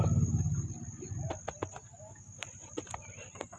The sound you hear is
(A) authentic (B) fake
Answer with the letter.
A